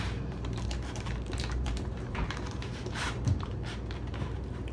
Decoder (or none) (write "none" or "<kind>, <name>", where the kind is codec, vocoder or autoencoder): vocoder, BigVGAN v2